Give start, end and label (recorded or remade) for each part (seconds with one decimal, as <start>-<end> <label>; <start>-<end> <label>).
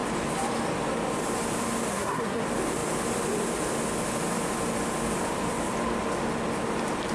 0.0-1.9 recorded; 1.9-2.4 remade; 2.4-7.1 recorded